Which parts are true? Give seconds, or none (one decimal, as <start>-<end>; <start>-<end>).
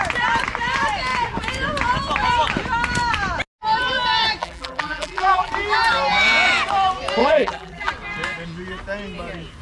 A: 0.0-4.4; 5.5-7.2; 7.9-9.6